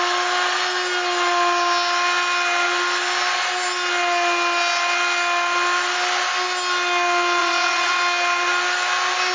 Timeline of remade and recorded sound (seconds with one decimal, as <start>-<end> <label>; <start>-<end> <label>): 0.0-7.4 recorded; 7.4-8.0 remade; 8.0-9.3 recorded